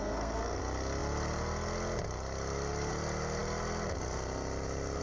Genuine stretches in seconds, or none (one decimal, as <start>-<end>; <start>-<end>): 0.6-5.0

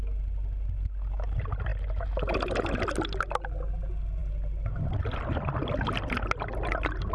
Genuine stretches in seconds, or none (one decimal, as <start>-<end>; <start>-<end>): 0.0-7.1

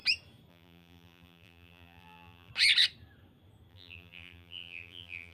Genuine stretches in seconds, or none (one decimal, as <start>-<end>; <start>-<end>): 0.0-0.5; 2.5-3.7

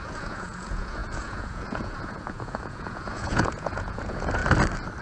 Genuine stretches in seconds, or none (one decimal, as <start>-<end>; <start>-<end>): 4.4-5.0

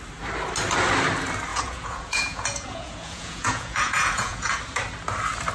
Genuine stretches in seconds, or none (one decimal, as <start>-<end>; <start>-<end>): 0.0-1.5; 4.6-5.5